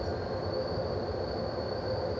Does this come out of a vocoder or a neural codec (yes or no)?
no